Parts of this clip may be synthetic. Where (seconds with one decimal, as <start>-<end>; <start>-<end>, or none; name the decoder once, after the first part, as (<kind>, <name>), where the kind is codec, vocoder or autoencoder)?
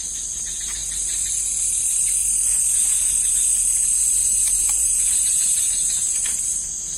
4.2-6.5 (vocoder, BigVGAN v2)